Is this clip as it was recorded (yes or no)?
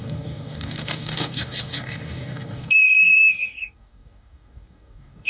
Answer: no